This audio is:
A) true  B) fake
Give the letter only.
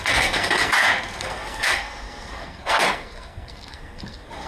B